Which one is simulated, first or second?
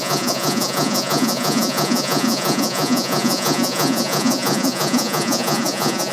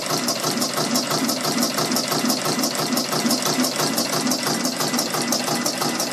first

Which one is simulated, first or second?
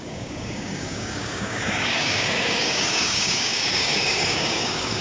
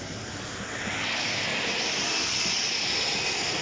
first